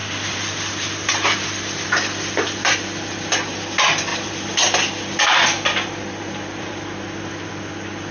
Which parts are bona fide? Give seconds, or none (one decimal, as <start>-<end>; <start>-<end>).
1.6-4.1; 7.5-8.1